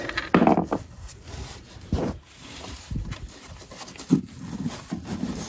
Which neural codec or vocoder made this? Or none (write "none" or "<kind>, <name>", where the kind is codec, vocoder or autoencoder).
none